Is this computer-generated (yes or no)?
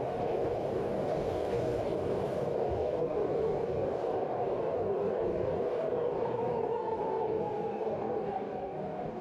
yes